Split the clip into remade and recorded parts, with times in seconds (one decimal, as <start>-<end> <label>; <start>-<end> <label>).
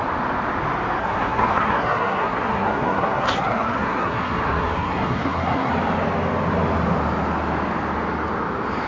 0.0-1.0 recorded; 1.0-5.7 remade; 5.7-8.9 recorded